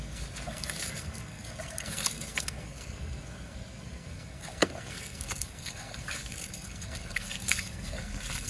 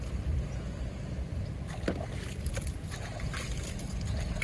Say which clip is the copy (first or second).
first